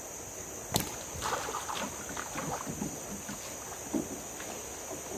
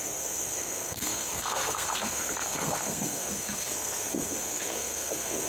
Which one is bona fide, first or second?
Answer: first